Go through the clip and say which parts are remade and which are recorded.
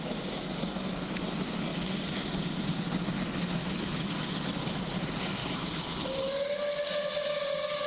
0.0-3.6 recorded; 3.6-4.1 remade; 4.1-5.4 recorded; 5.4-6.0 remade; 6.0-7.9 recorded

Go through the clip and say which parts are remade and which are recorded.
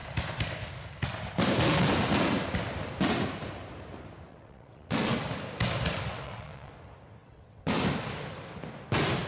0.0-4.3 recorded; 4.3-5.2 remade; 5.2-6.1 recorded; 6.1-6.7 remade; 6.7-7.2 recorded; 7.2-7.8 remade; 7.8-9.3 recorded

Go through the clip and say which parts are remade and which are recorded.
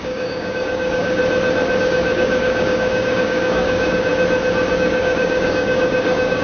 0.0-1.2 remade; 1.2-1.8 recorded; 1.8-4.1 remade; 4.1-4.7 recorded; 4.7-6.4 remade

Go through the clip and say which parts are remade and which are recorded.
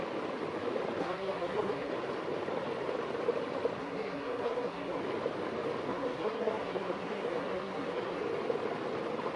0.0-1.0 recorded; 1.0-1.9 remade; 1.9-3.8 recorded; 3.8-5.0 remade; 5.0-5.9 recorded; 5.9-8.2 remade; 8.2-9.4 recorded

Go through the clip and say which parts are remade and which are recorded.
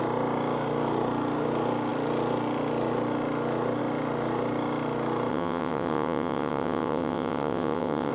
0.0-5.3 recorded; 5.3-8.1 remade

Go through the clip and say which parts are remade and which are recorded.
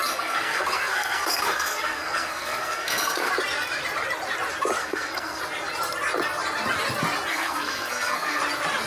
0.0-3.3 remade; 3.3-4.8 recorded; 4.8-5.4 remade; 5.4-7.3 recorded; 7.3-8.4 remade; 8.4-8.9 recorded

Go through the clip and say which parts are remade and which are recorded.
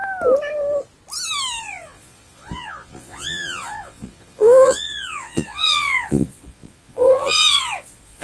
0.0-1.6 recorded; 1.6-8.2 remade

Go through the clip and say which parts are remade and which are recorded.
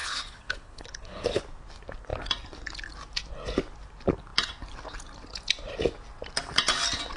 0.0-1.4 remade; 1.4-7.2 recorded